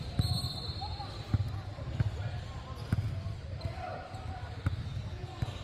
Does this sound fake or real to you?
real